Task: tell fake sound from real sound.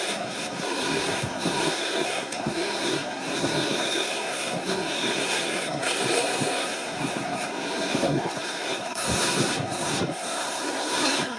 fake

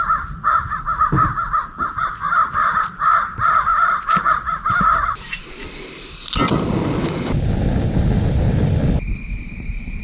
real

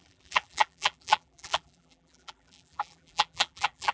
fake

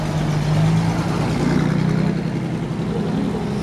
real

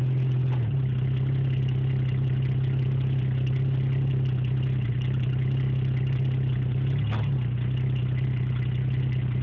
real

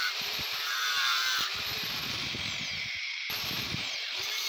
fake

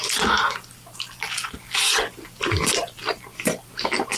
real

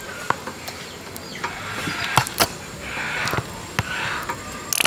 real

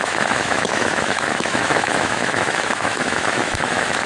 fake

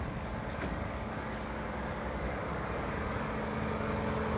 fake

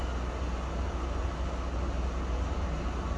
real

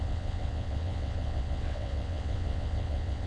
fake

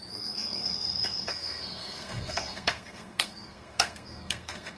fake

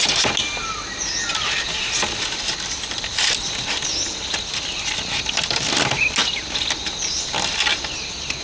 real